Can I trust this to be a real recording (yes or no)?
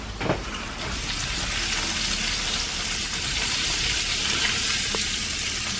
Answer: yes